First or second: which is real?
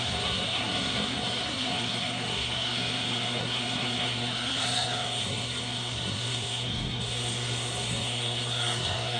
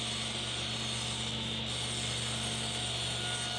second